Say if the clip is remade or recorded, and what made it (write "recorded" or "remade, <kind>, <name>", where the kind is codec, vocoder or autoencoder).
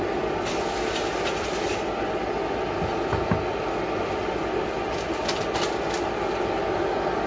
recorded